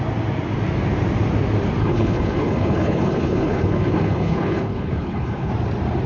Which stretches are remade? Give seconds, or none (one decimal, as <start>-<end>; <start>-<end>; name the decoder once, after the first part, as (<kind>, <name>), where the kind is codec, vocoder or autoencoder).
1.8-5.5 (codec, HILCodec)